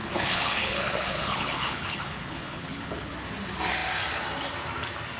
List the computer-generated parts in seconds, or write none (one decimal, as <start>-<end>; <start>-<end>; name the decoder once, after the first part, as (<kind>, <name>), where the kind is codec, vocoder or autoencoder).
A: 0.0-3.1 (codec, HILCodec)